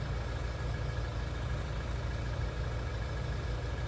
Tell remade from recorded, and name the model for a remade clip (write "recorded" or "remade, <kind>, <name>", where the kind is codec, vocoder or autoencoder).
recorded